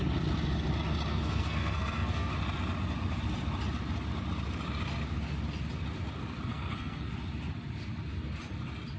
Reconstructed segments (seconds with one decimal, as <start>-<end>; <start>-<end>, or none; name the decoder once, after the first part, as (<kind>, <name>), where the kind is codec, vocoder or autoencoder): 1.1-2.3 (codec, SNAC); 6.5-7.1